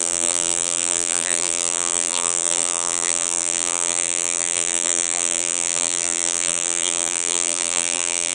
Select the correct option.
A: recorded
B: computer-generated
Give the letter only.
B